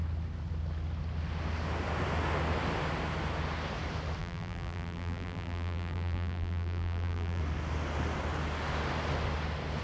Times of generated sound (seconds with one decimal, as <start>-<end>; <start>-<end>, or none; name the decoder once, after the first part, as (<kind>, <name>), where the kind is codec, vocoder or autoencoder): 4.2-7.4 (vocoder, BigVGAN v2)